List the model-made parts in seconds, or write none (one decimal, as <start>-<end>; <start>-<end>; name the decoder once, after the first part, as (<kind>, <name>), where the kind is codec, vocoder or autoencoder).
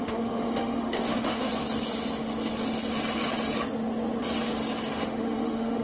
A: 0.0-1.5 (autoencoder, DAC-VAE); 5.0-5.8